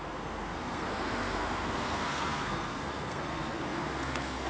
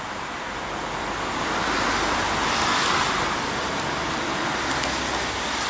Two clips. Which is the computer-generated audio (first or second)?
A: first